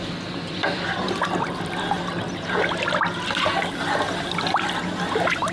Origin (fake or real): real